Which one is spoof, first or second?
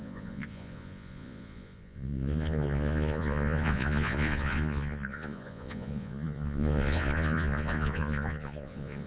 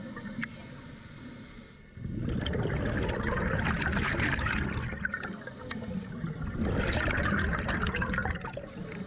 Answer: first